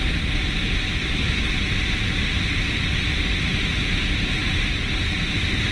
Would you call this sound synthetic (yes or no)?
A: no